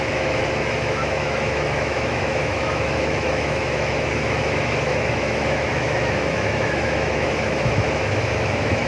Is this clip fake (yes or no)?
yes